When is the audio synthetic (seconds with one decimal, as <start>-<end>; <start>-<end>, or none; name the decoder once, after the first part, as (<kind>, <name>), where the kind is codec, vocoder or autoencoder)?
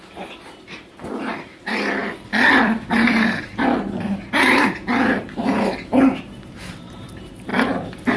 0.0-2.0 (vocoder, BigVGAN v2); 2.6-8.2